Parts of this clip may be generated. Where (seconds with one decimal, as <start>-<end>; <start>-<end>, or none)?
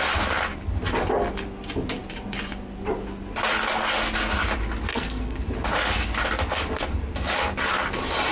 4.9-5.4